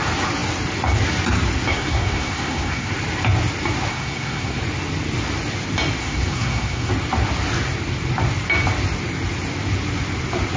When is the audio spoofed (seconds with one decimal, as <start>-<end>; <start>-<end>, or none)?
1.7-2.9; 3.9-4.6; 6.0-6.9